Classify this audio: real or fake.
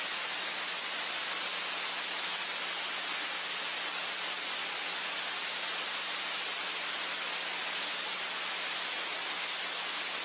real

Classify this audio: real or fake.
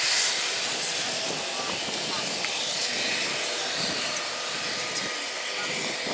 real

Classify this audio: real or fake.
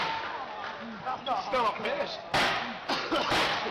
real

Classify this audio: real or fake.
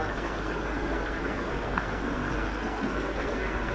fake